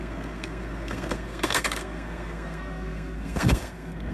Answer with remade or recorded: remade